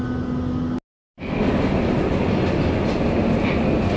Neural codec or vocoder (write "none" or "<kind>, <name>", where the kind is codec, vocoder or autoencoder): none